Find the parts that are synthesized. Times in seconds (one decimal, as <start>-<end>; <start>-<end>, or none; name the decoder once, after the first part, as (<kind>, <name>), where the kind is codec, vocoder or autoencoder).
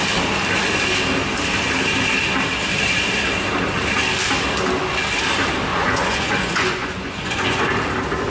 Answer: 5.7-7.6 (vocoder, Vocos)